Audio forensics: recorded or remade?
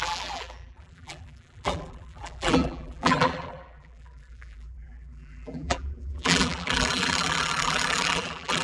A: remade